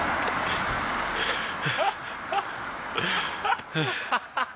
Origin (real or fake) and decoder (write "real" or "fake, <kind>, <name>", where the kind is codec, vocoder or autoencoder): real